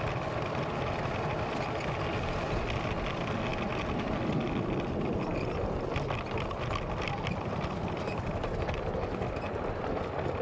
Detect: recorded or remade recorded